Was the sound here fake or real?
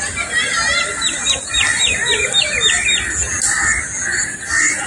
real